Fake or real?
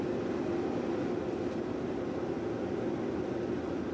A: real